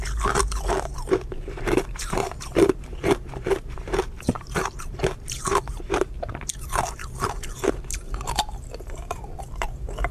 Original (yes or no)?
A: no